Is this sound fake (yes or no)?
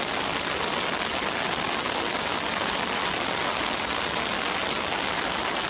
no